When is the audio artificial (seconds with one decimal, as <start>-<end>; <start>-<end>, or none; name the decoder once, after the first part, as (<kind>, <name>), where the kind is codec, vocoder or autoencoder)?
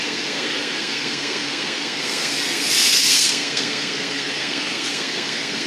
0.0-5.7 (codec, SNAC)